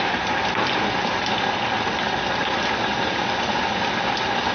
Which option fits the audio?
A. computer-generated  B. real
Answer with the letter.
B